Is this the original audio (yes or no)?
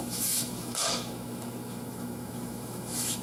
no